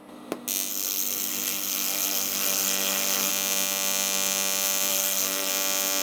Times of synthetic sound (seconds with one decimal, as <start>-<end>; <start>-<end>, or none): 0.7-3.3; 4.9-5.5